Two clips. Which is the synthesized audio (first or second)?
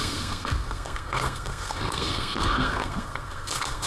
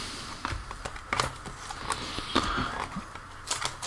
first